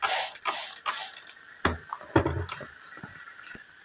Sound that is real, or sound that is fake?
real